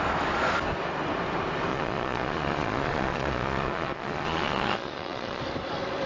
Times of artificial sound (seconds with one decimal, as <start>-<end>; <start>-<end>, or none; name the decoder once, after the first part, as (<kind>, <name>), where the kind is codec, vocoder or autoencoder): 1.7-5.4 (vocoder, Vocos)

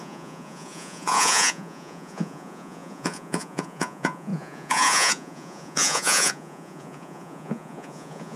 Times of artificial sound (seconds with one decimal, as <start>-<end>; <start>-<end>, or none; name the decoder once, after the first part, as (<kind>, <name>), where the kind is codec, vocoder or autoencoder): 0.0-8.4 (vocoder, Vocos)